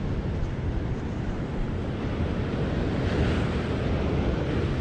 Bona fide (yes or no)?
yes